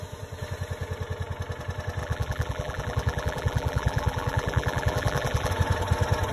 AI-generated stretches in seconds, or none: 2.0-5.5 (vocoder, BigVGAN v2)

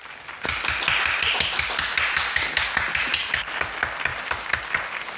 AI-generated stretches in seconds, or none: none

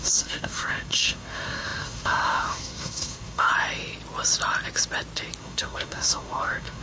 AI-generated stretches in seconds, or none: 0.0-3.5 (codec, SNAC); 5.4-6.8

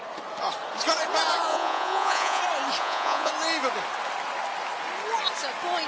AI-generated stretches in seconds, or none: 1.5-2.4 (vocoder, Vocos); 2.8-3.3

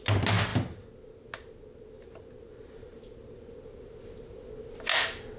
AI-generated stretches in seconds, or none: none

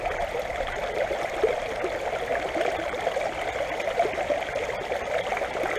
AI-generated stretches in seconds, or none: none

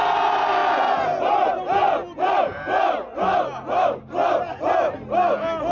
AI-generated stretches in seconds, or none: none